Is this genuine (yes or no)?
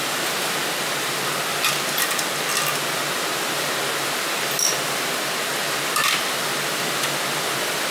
yes